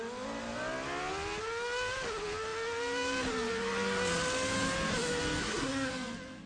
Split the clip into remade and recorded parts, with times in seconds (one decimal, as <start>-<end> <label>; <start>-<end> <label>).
0.0-5.4 recorded; 5.4-5.9 remade; 5.9-6.5 recorded

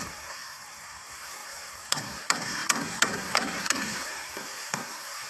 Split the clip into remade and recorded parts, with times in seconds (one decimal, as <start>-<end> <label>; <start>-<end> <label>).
0.0-5.3 remade